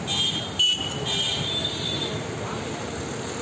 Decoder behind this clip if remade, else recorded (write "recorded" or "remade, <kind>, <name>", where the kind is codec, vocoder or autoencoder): recorded